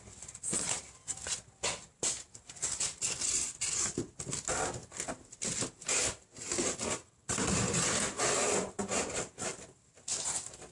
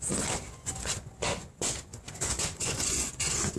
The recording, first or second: first